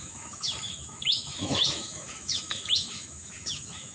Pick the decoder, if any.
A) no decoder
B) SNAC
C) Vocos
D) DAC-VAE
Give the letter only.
D